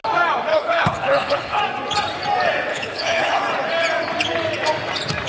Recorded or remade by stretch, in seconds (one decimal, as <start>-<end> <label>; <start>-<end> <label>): 0.0-0.5 recorded; 0.5-1.6 remade; 1.6-2.7 recorded; 2.7-3.4 remade; 3.4-5.3 recorded